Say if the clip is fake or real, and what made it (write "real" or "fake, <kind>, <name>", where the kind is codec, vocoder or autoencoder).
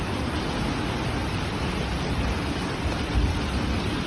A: real